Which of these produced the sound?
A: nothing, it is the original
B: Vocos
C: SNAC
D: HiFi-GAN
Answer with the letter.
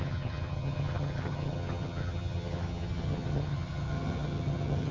D